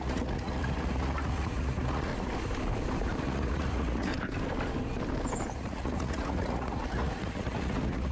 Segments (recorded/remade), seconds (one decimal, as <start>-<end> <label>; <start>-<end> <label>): 0.0-2.1 remade; 2.1-3.2 recorded; 3.2-4.1 remade; 4.1-5.6 recorded; 5.6-8.1 remade